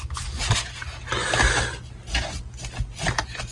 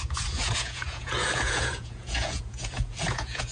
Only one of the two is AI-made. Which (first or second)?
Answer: second